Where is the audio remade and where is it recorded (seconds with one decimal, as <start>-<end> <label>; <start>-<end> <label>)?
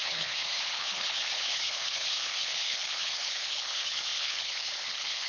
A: 0.0-5.3 remade